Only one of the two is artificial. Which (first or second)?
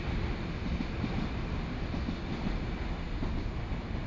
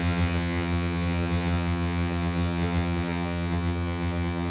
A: second